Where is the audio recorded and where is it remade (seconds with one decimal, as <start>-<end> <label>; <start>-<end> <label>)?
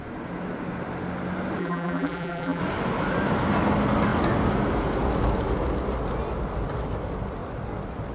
0.0-1.6 recorded; 1.6-2.6 remade; 2.6-8.1 recorded